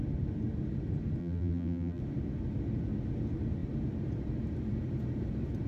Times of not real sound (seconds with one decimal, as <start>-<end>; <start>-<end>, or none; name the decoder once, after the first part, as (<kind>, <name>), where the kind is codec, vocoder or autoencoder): 1.2-2.0 (vocoder, BigVGAN v2)